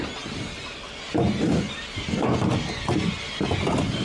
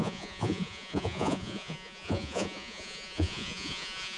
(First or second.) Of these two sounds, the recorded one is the first